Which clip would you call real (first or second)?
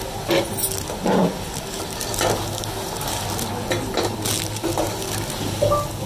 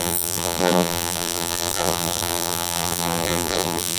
first